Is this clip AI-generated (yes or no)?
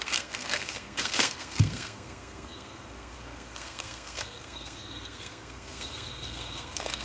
yes